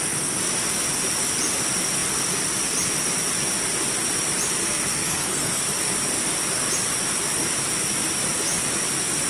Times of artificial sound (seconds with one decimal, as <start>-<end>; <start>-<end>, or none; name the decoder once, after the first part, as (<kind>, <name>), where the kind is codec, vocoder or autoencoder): 4.6-5.6 (codec, SNAC)